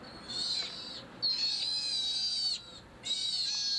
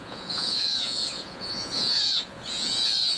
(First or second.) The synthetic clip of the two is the second